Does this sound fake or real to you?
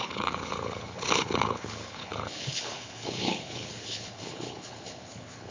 fake